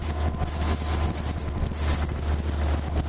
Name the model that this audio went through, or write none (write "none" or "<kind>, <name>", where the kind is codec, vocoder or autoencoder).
none